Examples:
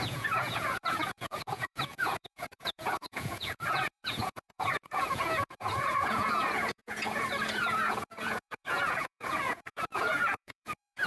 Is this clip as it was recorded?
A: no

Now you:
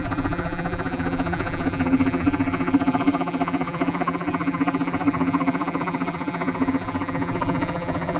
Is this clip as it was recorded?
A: no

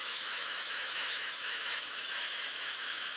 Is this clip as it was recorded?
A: no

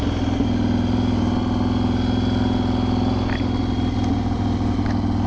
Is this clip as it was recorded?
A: yes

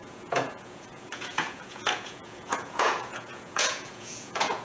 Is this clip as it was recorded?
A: no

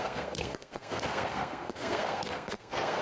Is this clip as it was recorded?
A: no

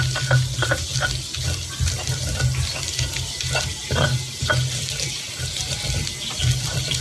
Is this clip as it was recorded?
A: yes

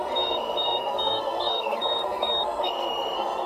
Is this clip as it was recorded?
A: no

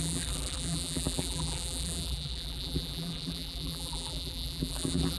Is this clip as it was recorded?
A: no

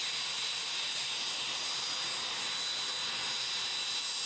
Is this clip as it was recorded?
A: yes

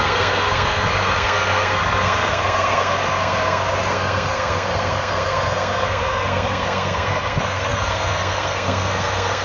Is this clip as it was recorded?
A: no